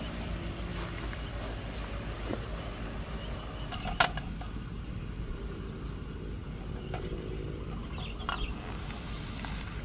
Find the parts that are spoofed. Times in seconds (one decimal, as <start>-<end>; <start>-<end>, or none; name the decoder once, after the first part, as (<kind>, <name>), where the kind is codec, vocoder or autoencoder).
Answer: none